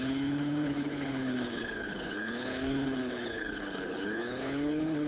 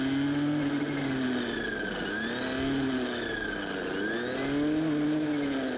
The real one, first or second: second